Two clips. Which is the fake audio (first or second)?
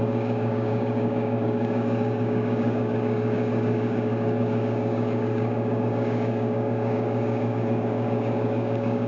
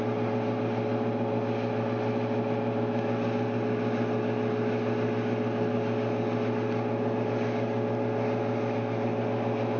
first